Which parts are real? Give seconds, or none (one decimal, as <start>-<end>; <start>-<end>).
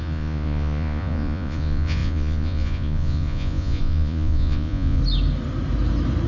5.0-6.3